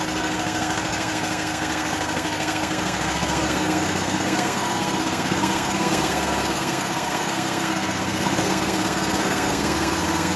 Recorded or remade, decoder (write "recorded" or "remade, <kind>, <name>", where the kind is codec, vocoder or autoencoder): remade, codec, SNAC